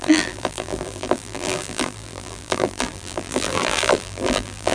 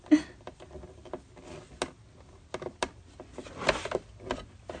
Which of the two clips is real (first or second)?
second